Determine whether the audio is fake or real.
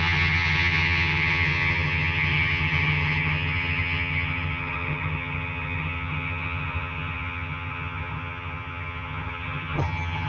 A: fake